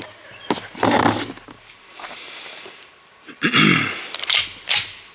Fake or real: real